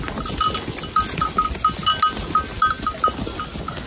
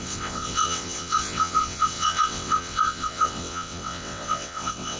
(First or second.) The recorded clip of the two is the first